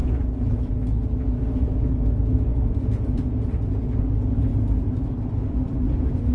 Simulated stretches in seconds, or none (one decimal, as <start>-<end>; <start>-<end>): 0.0-0.7; 2.5-4.0